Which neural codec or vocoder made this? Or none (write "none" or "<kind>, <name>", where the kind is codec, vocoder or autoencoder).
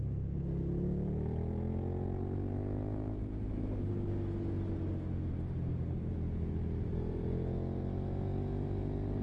none